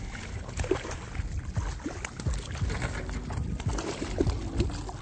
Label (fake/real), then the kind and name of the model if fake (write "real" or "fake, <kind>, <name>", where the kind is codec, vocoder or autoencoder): real